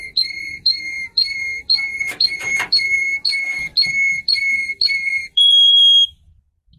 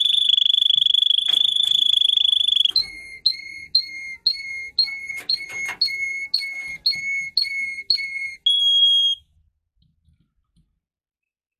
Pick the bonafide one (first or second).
second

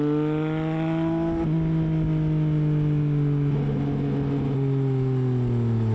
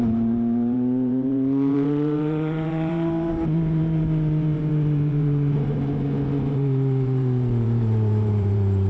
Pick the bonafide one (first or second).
first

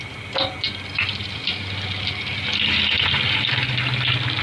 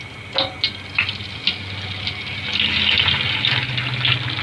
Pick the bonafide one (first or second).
second